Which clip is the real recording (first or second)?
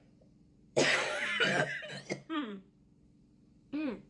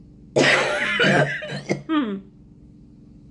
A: second